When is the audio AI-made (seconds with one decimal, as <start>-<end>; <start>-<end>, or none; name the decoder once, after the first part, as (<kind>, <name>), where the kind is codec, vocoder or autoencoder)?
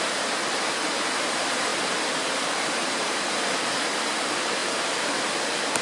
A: 0.0-4.6 (vocoder, BigVGAN v2)